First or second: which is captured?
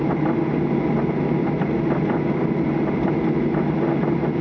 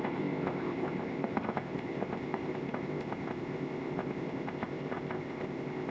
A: first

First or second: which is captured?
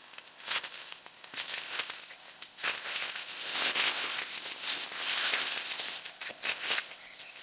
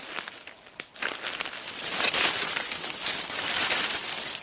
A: second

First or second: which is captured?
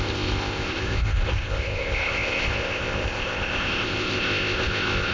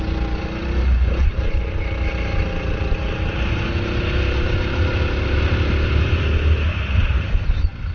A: second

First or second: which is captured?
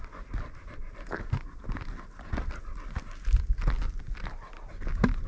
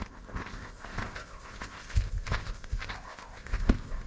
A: first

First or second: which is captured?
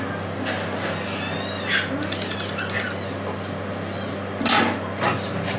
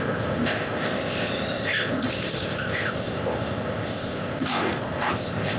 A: first